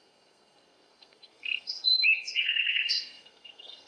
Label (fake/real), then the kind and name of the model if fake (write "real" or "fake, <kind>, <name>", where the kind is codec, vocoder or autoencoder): fake, codec, SNAC